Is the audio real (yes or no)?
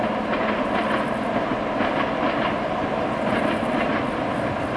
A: yes